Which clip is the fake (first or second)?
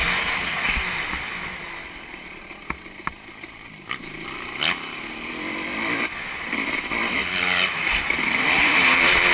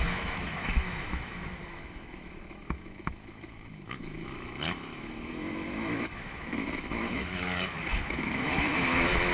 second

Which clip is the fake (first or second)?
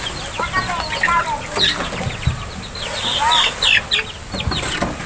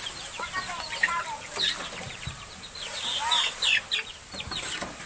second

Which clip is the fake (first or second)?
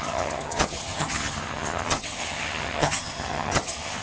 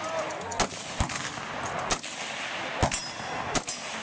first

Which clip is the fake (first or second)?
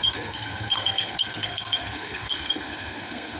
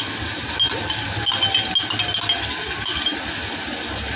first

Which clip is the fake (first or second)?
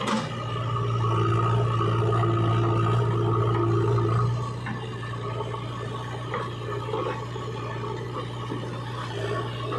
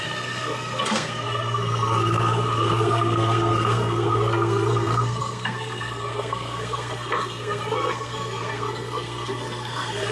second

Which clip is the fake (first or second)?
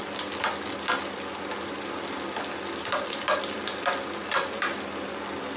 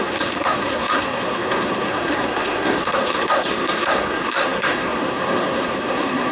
second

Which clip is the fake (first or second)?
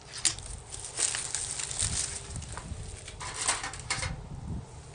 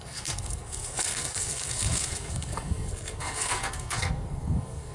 second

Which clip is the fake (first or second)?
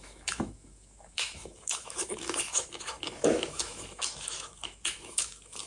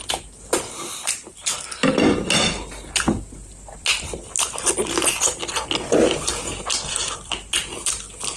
first